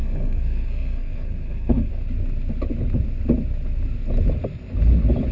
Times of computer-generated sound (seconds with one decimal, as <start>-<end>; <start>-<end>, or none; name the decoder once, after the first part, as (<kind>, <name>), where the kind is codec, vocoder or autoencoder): 0.0-1.9 (codec, SNAC)